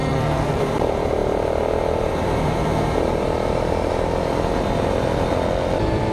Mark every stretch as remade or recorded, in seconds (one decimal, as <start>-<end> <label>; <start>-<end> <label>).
0.0-0.6 remade; 0.6-6.1 recorded